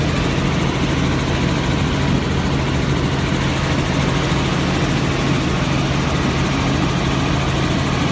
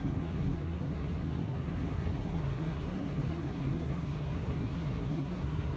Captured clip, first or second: first